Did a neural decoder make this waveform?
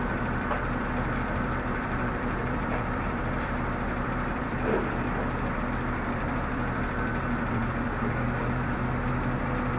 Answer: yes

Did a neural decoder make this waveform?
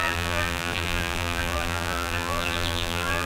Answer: yes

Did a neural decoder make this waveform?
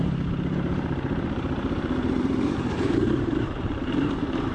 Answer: yes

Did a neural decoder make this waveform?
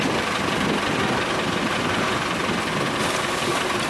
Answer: yes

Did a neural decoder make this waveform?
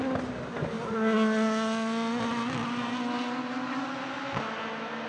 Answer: no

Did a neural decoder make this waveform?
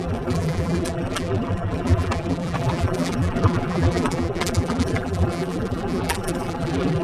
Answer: yes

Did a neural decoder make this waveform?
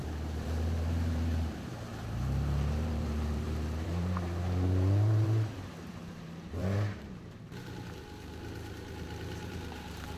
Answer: yes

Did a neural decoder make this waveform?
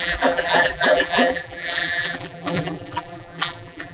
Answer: yes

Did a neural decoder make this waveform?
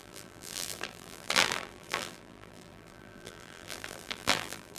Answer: yes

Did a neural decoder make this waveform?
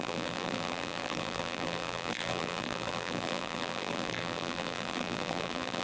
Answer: yes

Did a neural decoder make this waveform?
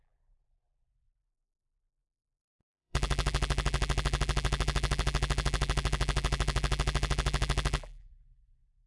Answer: yes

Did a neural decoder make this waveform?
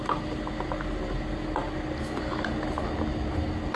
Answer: no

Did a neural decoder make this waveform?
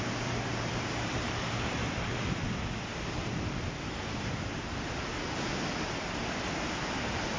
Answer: yes